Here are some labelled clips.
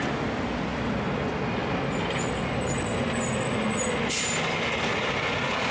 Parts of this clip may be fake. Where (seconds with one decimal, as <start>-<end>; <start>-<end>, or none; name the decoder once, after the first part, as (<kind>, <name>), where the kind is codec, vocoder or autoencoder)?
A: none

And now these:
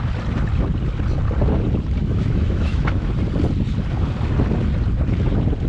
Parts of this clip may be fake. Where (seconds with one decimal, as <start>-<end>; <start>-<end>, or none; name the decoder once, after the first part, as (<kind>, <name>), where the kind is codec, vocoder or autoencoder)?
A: 2.0-3.1 (autoencoder, DAC-VAE)

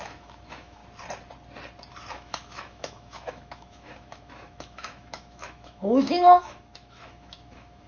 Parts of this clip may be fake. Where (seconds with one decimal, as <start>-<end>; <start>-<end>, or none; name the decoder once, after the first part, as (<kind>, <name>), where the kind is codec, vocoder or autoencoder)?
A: 0.0-0.8 (autoencoder, DAC-VAE); 2.1-7.9